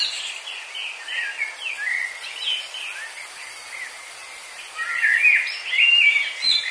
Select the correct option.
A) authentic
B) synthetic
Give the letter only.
A